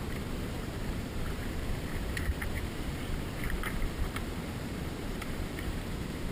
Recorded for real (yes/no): no